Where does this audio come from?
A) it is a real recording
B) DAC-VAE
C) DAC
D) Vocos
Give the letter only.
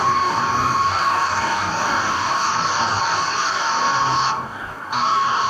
C